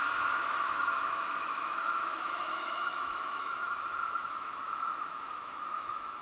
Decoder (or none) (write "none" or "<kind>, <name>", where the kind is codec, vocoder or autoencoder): autoencoder, DAC-VAE